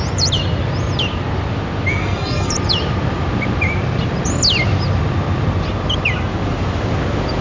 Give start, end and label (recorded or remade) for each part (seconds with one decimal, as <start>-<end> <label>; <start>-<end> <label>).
0.0-1.9 recorded; 1.9-2.5 remade; 2.5-7.4 recorded